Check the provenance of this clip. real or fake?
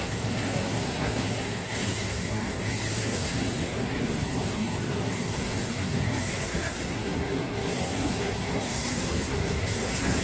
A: fake